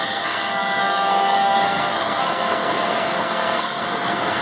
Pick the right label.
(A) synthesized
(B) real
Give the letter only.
A